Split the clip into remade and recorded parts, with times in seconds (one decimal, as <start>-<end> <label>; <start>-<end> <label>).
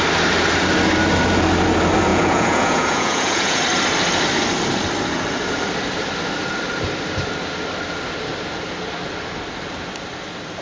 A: 0.0-2.1 recorded; 2.1-3.6 remade; 3.6-10.6 recorded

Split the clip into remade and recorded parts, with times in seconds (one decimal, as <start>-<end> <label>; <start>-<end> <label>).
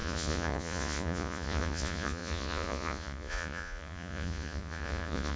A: 0.0-5.4 remade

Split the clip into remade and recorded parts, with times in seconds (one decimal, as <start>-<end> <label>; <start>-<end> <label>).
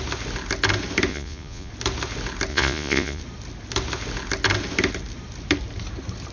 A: 0.0-1.1 recorded; 1.1-1.7 remade; 1.7-2.5 recorded; 2.5-3.2 remade; 3.2-6.3 recorded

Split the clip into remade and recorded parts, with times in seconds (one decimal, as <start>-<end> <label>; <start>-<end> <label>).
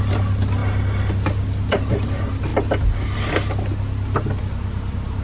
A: 0.0-5.2 recorded